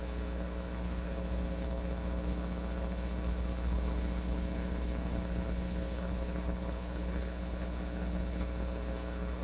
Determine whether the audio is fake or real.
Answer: fake